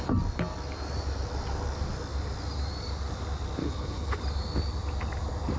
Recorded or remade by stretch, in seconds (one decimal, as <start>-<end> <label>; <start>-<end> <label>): 0.0-3.6 recorded; 3.6-4.2 remade; 4.2-5.6 recorded